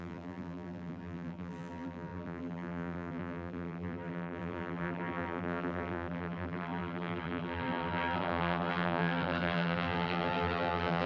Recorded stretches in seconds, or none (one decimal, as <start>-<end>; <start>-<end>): none